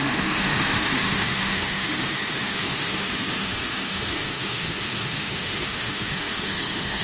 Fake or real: fake